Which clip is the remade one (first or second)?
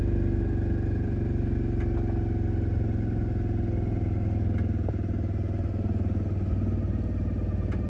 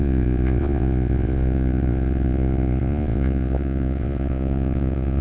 second